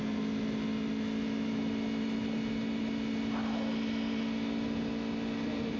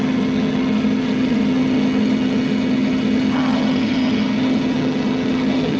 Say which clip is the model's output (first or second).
second